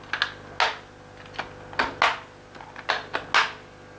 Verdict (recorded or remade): recorded